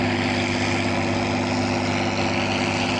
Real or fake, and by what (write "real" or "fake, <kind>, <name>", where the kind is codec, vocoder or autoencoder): real